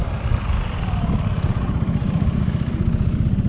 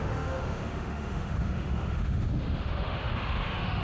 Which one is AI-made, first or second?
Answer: second